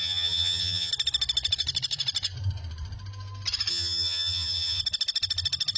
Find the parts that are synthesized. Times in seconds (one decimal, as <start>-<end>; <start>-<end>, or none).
0.0-0.9; 3.7-4.8